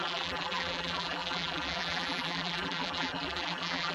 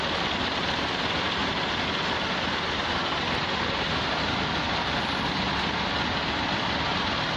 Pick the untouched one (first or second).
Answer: second